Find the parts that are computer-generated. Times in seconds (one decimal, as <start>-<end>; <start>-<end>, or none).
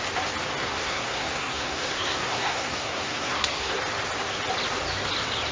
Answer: 0.6-3.8